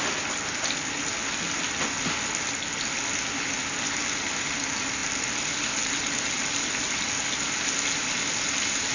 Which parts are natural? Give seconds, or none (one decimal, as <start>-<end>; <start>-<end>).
0.0-8.9